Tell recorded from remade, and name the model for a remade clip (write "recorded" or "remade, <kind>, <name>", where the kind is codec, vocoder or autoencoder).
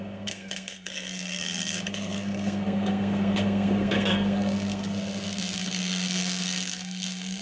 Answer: remade, codec, SNAC